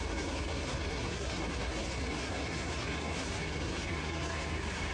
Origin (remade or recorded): remade